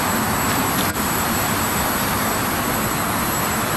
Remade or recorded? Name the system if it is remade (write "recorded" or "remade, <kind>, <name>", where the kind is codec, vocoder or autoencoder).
recorded